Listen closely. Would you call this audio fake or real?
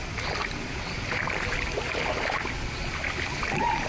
real